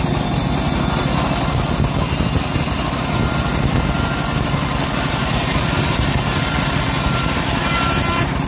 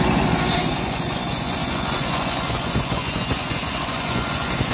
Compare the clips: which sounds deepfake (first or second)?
second